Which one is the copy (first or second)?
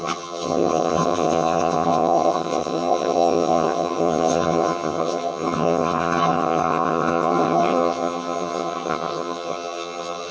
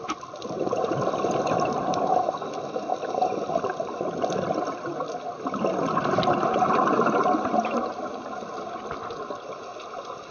first